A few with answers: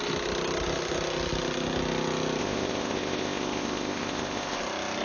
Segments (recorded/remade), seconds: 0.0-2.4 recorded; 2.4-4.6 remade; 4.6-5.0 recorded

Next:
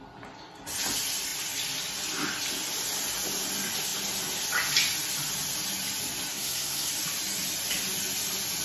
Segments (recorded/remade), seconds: 0.0-6.3 recorded; 6.3-6.9 remade; 6.9-8.6 recorded

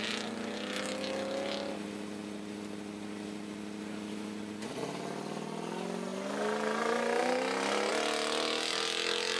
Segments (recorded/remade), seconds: 0.0-9.4 recorded

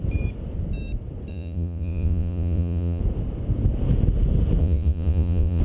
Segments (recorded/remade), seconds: 0.0-1.3 recorded; 1.3-3.0 remade; 3.0-4.6 recorded; 4.6-5.6 remade

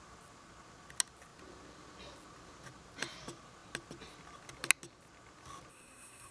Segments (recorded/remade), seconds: 0.0-5.7 recorded; 5.7-6.3 remade

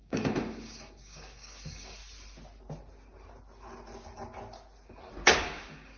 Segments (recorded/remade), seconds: 0.0-2.0 remade; 2.0-5.4 recorded; 5.4-6.0 remade